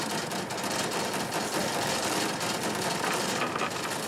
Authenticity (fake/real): real